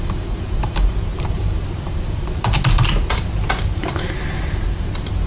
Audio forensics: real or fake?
fake